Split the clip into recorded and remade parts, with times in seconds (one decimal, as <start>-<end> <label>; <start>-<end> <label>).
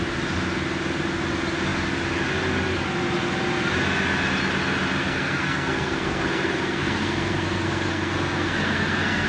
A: 0.0-5.0 recorded; 5.0-9.3 remade